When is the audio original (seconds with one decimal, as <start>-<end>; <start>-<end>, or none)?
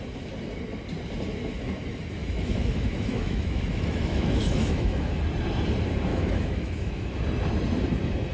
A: 0.0-2.2; 5.2-6.1; 7.2-8.3